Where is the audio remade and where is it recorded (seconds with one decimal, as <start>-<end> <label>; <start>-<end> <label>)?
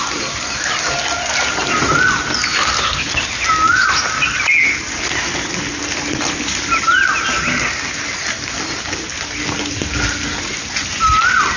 0.0-11.6 recorded